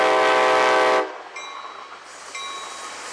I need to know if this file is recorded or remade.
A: recorded